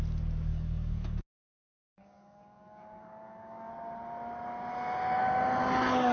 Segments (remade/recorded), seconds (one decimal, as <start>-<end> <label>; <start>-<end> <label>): 0.0-0.5 recorded; 0.5-3.7 remade; 3.7-6.1 recorded